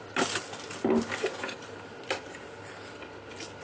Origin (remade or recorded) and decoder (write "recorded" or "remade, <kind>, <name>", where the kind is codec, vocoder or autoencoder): recorded